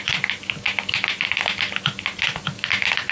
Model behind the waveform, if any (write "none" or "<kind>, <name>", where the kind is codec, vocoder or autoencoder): none